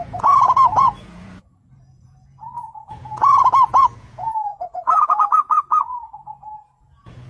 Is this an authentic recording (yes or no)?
no